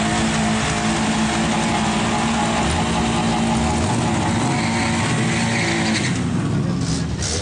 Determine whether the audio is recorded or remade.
recorded